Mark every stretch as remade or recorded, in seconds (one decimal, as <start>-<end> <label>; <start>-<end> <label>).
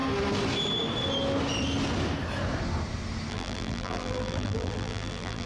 0.0-3.3 recorded; 3.3-5.5 remade